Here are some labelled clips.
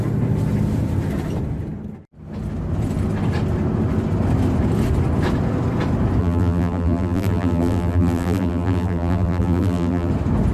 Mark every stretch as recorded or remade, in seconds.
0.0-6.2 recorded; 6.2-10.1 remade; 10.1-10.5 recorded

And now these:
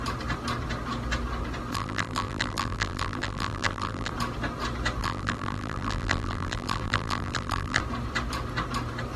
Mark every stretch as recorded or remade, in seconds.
0.0-1.7 recorded; 1.7-4.1 remade; 4.1-5.0 recorded; 5.0-7.8 remade; 7.8-9.2 recorded

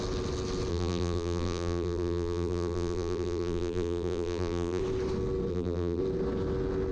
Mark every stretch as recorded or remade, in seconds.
0.0-0.7 recorded; 0.7-4.8 remade; 4.8-5.5 recorded; 5.5-6.0 remade; 6.0-6.9 recorded

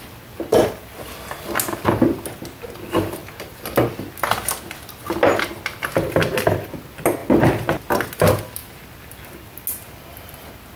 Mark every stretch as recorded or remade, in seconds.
0.0-0.5 recorded; 0.5-1.5 remade; 1.5-10.8 recorded

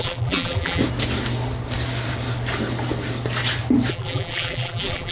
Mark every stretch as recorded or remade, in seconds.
0.0-0.8 remade; 0.8-3.9 recorded; 3.9-5.1 remade

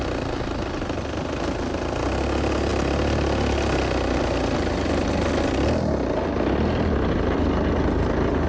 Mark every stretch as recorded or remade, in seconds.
0.0-8.5 recorded

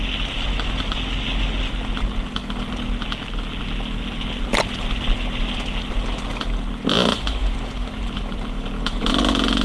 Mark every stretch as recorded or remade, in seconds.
0.0-7.4 recorded; 7.4-9.1 remade; 9.1-9.6 recorded

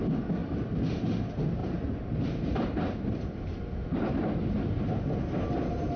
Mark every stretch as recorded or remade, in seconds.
0.0-1.6 recorded; 1.6-5.0 remade; 5.0-6.0 recorded